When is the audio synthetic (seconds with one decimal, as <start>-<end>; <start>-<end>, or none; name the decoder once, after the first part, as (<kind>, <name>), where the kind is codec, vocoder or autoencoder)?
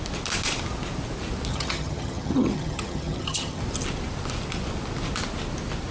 1.5-3.6 (vocoder, HiFi-GAN)